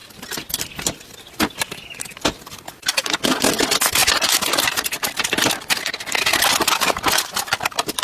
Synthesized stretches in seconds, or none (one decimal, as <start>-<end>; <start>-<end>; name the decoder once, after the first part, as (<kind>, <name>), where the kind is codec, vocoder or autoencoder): none